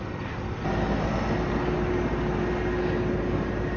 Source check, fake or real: real